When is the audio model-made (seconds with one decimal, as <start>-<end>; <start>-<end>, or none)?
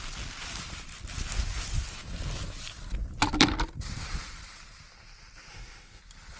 5.5-6.0